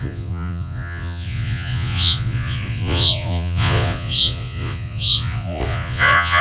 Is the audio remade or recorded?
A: remade